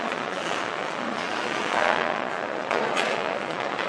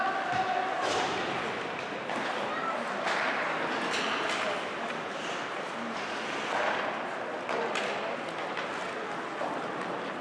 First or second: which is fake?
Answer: first